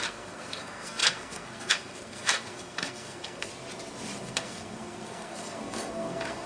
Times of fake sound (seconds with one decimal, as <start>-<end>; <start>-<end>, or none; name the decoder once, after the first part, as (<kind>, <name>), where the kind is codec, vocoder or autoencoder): 0.0-3.5 (codec, SNAC); 4.2-6.5